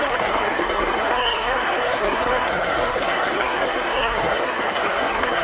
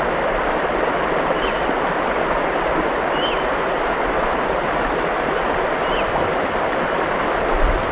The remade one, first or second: first